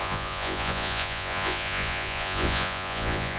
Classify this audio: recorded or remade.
remade